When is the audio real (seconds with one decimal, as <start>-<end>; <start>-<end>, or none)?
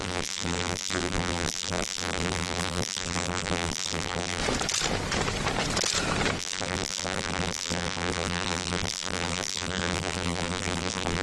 4.4-6.4